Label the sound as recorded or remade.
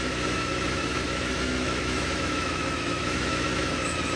remade